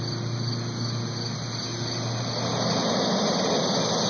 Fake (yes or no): no